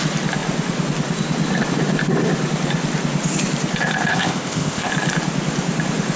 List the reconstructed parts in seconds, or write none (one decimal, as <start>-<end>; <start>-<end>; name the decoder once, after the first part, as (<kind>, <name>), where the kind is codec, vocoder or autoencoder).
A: 4.1-4.9 (codec, ZipCodec)